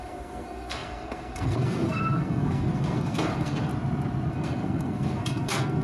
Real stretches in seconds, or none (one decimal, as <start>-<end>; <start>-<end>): 3.7-4.3